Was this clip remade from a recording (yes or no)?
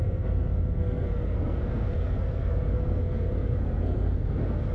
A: yes